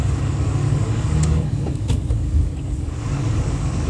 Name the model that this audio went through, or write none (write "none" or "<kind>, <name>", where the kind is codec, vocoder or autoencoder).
codec, DAC